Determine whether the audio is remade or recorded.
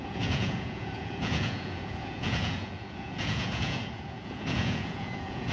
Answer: remade